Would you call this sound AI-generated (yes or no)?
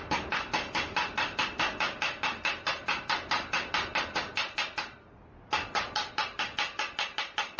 no